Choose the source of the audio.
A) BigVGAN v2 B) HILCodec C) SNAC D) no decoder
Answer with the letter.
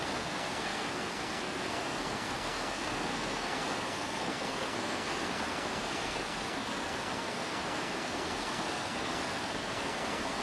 C